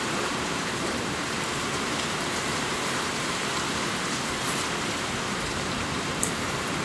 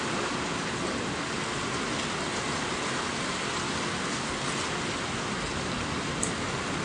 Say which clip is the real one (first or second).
second